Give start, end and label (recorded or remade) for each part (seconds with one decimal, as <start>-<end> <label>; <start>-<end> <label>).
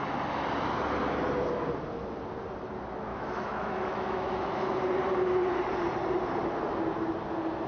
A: 0.0-3.1 recorded; 3.1-4.8 remade; 4.8-7.7 recorded